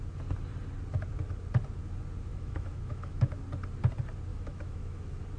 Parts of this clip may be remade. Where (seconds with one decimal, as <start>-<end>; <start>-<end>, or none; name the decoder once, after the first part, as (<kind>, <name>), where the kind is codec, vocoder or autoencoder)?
2.3-3.4 (autoencoder, DAC-VAE); 4.3-5.0

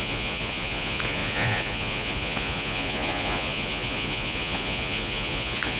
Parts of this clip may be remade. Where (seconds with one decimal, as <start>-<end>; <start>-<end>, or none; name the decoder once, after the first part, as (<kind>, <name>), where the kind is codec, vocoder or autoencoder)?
0.0-5.8 (vocoder, Vocos)